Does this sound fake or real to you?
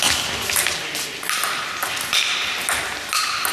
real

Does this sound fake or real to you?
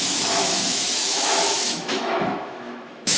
fake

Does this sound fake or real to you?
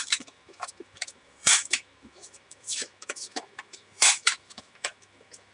fake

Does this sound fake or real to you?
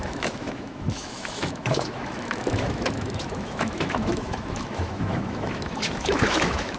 fake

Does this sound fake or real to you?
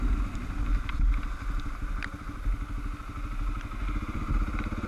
real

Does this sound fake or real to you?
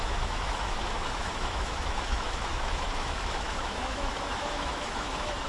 fake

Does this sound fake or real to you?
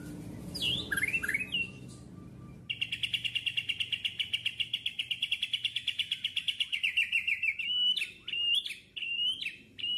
real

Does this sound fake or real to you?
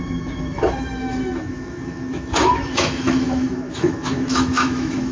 fake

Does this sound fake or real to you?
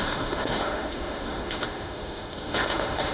fake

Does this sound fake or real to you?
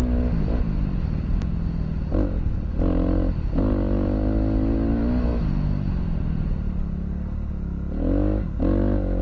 real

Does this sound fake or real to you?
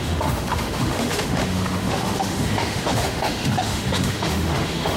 fake